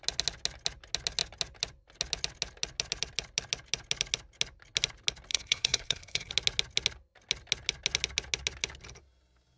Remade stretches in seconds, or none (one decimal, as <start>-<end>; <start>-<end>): 5.3-6.3

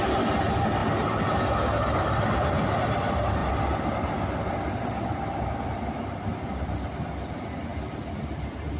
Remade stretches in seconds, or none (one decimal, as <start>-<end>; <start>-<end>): none

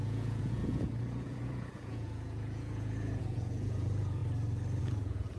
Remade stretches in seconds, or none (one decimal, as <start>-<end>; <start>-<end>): 0.0-4.2; 4.8-5.4

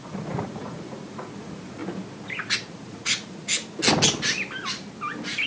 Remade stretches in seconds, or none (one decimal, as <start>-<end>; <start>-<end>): 0.0-1.8; 2.7-3.5

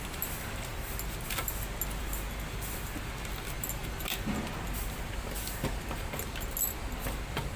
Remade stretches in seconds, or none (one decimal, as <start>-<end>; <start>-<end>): none

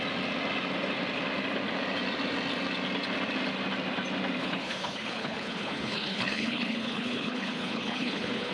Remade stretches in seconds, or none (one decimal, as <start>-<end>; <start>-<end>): 4.4-8.5

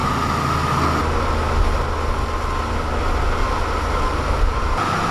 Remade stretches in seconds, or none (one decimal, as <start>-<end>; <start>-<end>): none

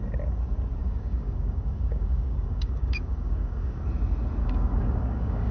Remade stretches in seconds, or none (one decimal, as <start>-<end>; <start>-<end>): 0.8-3.8; 4.4-5.5